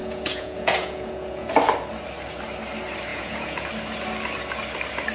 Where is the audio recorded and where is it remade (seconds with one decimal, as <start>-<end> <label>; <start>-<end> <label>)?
0.0-1.5 remade; 1.5-3.1 recorded; 3.1-3.7 remade; 3.7-5.1 recorded